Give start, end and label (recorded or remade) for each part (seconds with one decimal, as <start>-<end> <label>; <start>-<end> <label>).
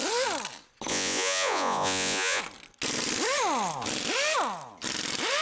0.0-0.9 recorded; 0.9-2.4 remade; 2.4-5.4 recorded